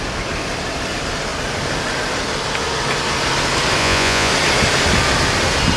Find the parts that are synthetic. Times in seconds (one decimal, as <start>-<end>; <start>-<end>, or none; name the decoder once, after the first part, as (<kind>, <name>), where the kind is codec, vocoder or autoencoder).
3.8-4.3 (vocoder, Vocos)